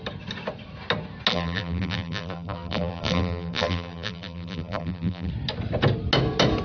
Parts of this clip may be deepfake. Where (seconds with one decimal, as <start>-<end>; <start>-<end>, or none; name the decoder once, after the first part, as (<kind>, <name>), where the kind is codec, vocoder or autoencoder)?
1.3-5.3 (vocoder, BigVGAN v2)